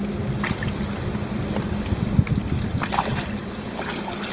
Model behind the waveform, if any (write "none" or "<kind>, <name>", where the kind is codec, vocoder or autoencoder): none